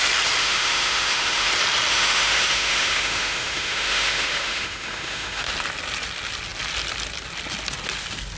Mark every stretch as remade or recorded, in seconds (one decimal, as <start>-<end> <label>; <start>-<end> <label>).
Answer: 0.0-0.4 recorded; 0.4-1.5 remade; 1.5-1.9 recorded; 1.9-5.5 remade; 5.5-8.4 recorded